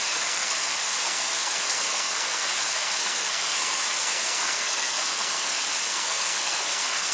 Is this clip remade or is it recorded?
remade